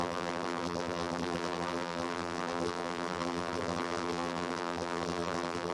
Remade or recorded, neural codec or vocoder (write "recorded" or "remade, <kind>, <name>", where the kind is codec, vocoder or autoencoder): remade, vocoder, BigVGAN v2